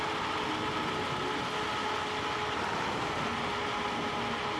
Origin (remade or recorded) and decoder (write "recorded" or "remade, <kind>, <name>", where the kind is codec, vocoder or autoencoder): recorded